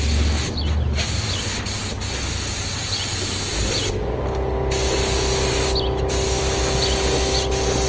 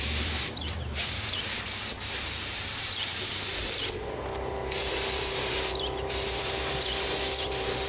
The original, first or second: first